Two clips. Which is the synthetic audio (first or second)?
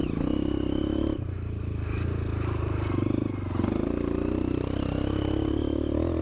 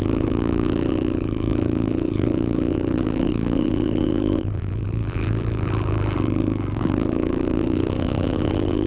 second